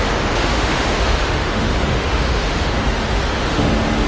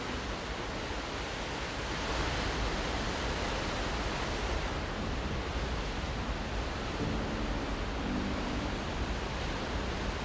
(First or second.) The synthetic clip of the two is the first